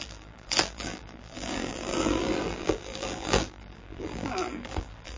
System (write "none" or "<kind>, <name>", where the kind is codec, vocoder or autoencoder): vocoder, BigVGAN v2